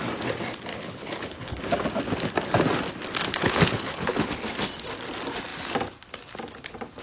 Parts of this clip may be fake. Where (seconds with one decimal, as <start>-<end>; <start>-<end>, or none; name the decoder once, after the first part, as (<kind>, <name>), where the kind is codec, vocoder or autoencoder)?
0.7-1.6 (codec, HILCodec); 3.3-4.3